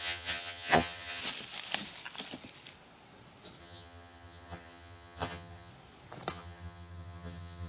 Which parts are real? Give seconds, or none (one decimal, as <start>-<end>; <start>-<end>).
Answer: 1.2-3.6; 5.7-6.3